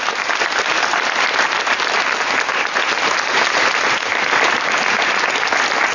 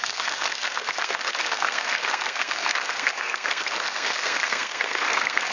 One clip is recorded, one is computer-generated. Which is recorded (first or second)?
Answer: first